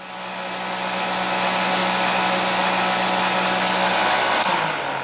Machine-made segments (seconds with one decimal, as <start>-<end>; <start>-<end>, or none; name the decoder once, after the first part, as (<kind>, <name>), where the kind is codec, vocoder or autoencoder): none